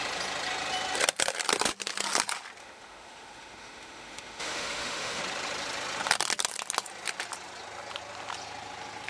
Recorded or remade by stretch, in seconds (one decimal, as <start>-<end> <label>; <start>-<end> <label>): 0.0-2.6 recorded; 2.6-5.2 remade; 5.2-9.1 recorded